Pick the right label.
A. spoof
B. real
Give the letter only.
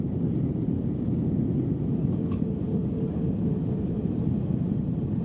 A